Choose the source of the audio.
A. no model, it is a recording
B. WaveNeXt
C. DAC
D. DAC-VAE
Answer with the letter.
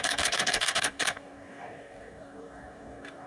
C